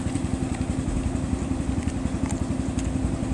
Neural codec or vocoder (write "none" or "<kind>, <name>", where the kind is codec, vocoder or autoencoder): vocoder, BigVGAN v2